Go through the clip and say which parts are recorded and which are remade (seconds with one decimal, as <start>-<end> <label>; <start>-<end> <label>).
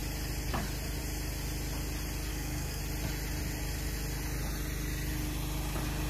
0.0-2.3 recorded; 2.3-2.8 remade; 2.8-6.1 recorded